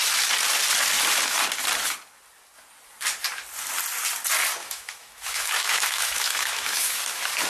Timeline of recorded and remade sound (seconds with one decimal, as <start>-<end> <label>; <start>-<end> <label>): 0.0-4.6 recorded; 4.6-7.0 remade; 7.0-7.5 recorded